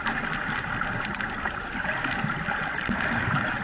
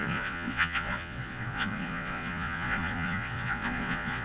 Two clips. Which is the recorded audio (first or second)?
first